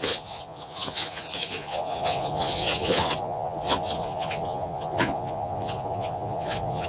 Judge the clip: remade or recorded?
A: remade